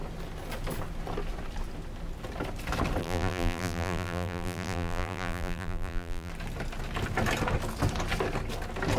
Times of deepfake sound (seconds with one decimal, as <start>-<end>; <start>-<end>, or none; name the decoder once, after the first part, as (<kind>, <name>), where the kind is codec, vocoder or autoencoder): 3.0-6.3 (vocoder, BigVGAN v2)